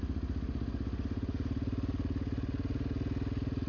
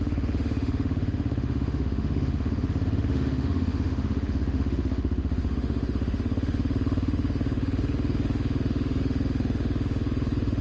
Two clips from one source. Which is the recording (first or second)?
first